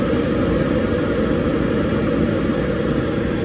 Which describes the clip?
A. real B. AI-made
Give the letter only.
A